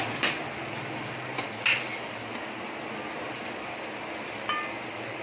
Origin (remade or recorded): recorded